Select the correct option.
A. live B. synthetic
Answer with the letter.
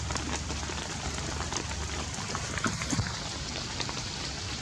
B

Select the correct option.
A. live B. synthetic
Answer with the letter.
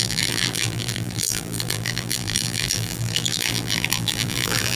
B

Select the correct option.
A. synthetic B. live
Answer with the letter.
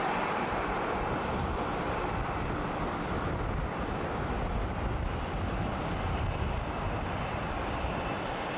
A